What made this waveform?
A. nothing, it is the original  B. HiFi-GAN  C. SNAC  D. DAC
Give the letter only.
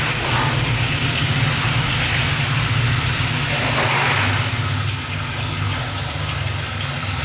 A